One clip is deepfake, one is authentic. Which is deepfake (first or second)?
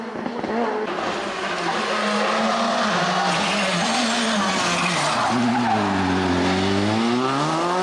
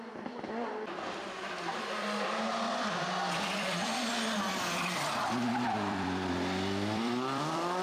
second